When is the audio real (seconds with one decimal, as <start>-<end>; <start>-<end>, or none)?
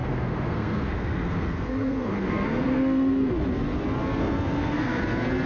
3.3-4.2; 5.0-5.5